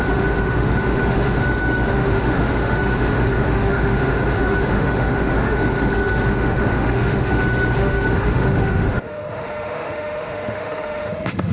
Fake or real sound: fake